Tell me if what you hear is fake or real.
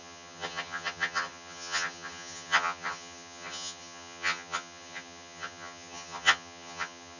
fake